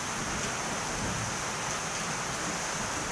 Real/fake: real